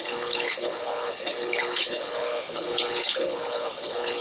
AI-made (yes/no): yes